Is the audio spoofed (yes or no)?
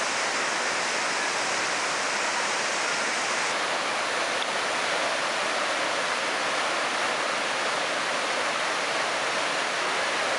no